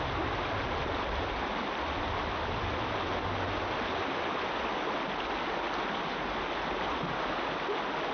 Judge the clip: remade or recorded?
recorded